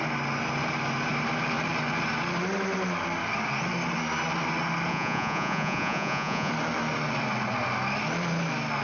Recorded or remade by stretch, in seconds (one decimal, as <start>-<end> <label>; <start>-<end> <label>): 0.0-4.9 recorded; 4.9-6.5 remade; 6.5-8.8 recorded